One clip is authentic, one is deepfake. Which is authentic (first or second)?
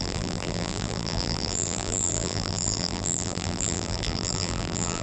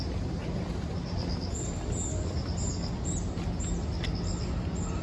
second